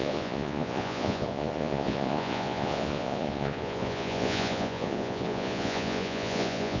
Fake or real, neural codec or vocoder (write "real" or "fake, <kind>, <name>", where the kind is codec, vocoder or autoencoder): fake, vocoder, Vocos